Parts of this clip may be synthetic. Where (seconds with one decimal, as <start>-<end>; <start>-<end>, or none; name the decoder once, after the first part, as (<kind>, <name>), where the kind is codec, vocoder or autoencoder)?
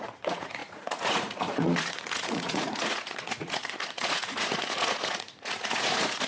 0.0-6.3 (vocoder, Vocos)